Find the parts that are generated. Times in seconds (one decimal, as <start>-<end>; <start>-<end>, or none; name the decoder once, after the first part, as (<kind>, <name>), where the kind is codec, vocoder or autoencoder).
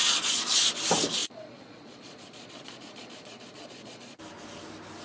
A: 0.0-0.7 (vocoder, Vocos); 1.2-4.2